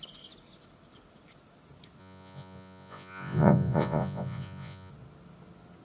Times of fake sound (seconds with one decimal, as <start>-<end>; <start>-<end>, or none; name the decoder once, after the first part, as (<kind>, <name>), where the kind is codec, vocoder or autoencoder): 2.0-4.9 (vocoder, Vocos)